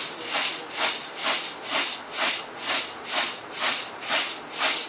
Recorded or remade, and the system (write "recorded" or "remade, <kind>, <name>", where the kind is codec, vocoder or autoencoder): recorded